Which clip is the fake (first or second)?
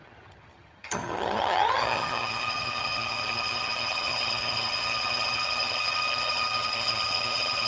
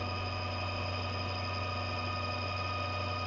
first